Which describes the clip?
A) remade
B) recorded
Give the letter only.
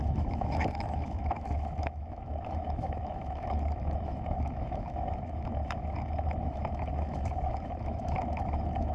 A